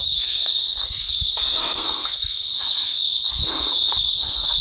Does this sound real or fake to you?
fake